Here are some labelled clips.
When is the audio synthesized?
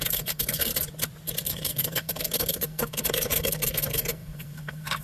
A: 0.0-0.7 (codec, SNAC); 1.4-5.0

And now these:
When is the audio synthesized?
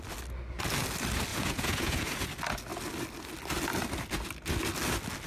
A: 1.3-2.3 (vocoder, Vocos)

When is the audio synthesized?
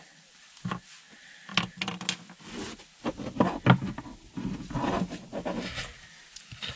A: none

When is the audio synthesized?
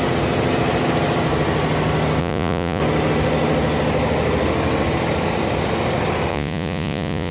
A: 2.2-2.8 (vocoder, Vocos); 6.3-7.3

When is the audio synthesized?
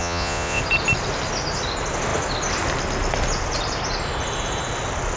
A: 0.0-0.6 (vocoder, Vocos)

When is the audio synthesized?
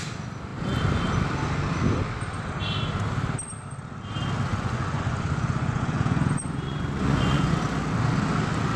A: 4.5-7.6 (vocoder, Vocos)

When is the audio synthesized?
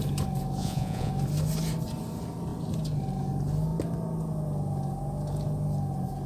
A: 0.6-1.1 (vocoder, Vocos)